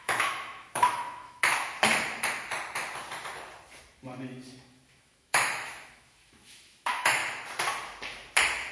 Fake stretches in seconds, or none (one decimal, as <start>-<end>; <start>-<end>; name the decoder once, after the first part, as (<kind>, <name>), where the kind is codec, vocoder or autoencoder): 0.0-1.5 (autoencoder, DAC-VAE); 4.7-7.2